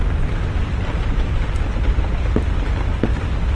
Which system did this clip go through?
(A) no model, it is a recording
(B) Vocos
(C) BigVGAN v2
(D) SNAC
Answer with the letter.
A